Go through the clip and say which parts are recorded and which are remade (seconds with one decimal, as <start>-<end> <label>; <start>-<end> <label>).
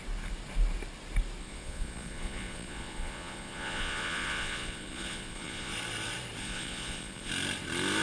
0.0-1.4 recorded; 1.4-5.7 remade; 5.7-6.4 recorded; 6.4-7.3 remade; 7.3-8.0 recorded